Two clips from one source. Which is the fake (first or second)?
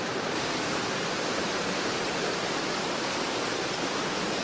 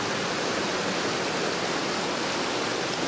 first